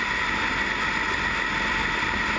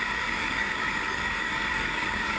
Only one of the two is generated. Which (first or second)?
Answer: second